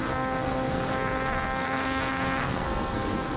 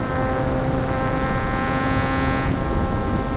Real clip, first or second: second